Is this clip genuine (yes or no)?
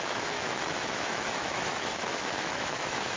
no